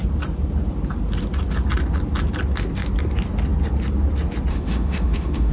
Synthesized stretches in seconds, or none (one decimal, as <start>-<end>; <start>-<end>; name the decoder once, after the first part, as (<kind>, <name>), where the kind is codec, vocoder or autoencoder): 4.5-5.5 (autoencoder, DAC-VAE)